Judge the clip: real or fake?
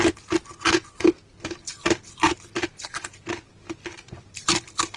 real